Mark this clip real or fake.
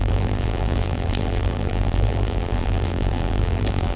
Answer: fake